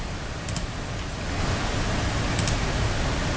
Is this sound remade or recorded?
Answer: recorded